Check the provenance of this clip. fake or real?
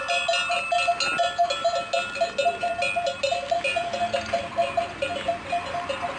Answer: real